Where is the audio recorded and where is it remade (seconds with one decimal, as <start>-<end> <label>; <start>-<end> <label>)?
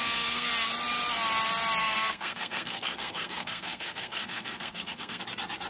0.0-0.5 remade; 0.5-1.8 recorded; 1.8-5.2 remade; 5.2-5.7 recorded